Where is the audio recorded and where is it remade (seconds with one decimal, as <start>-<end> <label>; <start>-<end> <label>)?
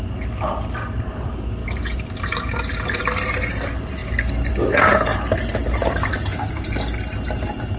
0.0-1.6 recorded; 1.6-3.0 remade; 3.0-7.8 recorded